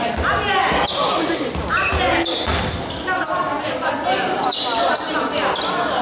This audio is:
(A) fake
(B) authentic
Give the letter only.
B